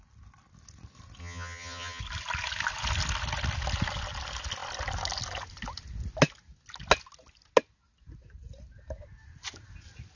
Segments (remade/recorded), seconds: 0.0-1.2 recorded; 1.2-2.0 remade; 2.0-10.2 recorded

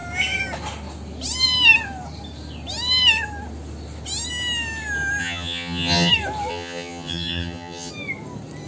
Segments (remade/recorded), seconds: 0.0-5.2 recorded; 5.2-6.1 remade; 6.1-6.5 recorded; 6.5-7.9 remade; 7.9-8.7 recorded

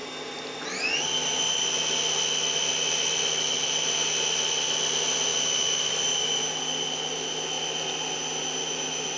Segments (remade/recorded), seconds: 0.0-9.2 recorded

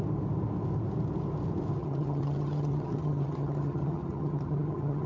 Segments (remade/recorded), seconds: 0.0-1.8 recorded; 1.8-5.1 remade

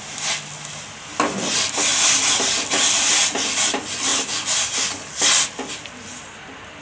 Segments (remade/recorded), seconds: 0.0-6.8 recorded

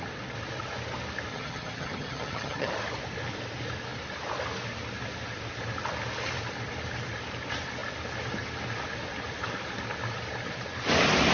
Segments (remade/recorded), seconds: 0.0-1.3 recorded; 1.3-2.7 remade; 2.7-11.3 recorded